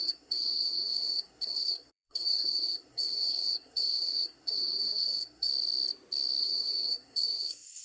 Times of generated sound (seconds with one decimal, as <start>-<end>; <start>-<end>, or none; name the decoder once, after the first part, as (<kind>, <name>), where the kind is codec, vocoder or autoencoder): 0.0-5.5 (codec, SNAC); 6.4-7.8